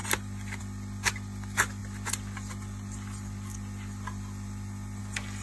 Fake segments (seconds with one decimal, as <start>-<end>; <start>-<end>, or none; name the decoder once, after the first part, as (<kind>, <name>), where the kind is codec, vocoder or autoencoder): none